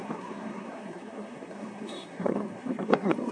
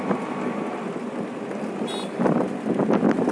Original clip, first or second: second